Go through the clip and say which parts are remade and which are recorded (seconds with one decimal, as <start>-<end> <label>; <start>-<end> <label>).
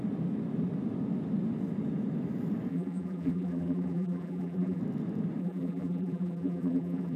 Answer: 0.0-2.7 recorded; 2.7-4.8 remade; 4.8-5.4 recorded; 5.4-7.2 remade